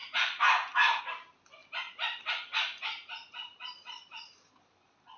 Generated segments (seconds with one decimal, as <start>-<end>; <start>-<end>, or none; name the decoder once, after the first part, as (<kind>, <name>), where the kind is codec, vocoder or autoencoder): 0.0-1.0 (vocoder, BigVGAN v2); 3.4-4.5